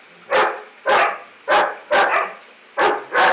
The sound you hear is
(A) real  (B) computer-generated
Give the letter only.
A